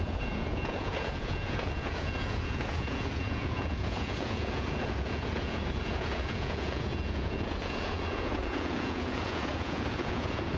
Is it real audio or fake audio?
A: fake